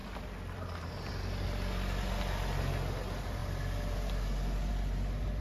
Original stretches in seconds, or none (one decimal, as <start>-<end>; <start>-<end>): 1.1-5.4